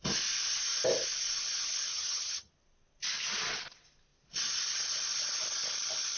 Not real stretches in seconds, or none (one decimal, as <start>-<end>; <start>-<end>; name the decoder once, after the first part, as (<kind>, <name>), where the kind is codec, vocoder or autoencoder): 1.9-2.5 (vocoder, HiFi-GAN)